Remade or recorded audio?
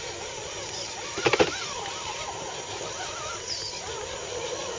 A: recorded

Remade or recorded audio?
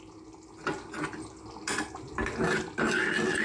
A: recorded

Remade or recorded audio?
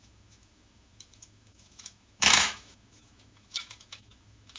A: remade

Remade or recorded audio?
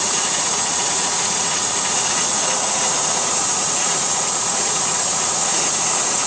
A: remade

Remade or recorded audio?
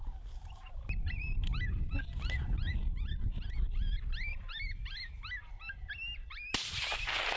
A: recorded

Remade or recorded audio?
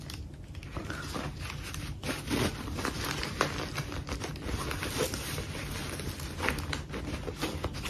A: recorded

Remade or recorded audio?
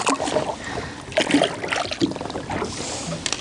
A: recorded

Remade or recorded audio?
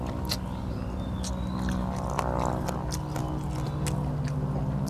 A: recorded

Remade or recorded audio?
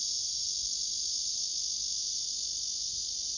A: recorded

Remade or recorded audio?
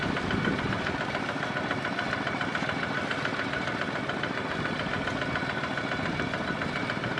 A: recorded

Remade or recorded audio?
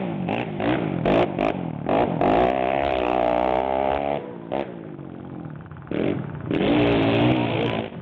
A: recorded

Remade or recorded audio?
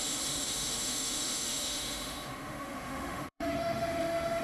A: remade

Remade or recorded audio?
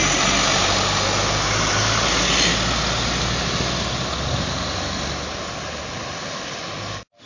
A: recorded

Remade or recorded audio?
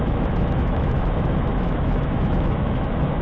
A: remade